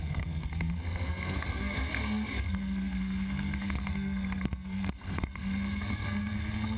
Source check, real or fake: fake